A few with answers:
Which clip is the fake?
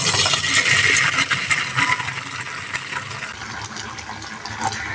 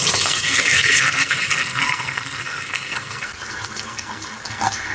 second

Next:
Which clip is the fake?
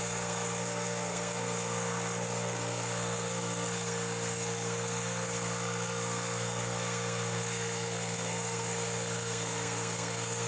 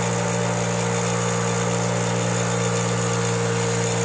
first